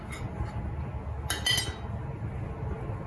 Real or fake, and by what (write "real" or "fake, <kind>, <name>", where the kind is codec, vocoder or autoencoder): real